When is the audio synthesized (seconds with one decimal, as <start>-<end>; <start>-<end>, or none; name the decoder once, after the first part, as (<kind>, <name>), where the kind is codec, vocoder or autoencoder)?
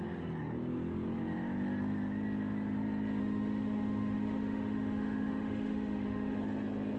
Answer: 3.2-6.4 (autoencoder, DAC-VAE)